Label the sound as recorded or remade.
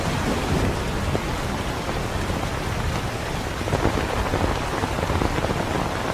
recorded